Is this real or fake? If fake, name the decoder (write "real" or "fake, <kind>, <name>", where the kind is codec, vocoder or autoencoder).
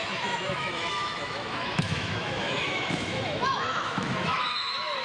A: fake, autoencoder, DAC-VAE